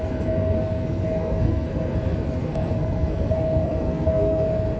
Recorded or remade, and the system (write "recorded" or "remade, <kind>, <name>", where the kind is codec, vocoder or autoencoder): remade, codec, SNAC